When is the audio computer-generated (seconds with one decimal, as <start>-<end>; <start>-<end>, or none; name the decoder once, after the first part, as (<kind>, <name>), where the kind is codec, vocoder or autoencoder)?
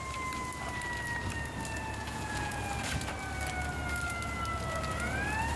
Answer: 2.0-2.6 (vocoder, Vocos)